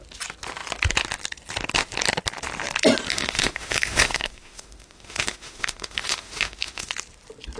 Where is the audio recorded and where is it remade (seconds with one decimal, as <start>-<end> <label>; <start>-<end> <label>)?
0.0-3.1 recorded; 3.1-6.9 remade; 6.9-7.6 recorded